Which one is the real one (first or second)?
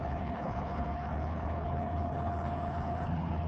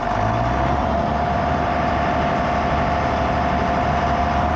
second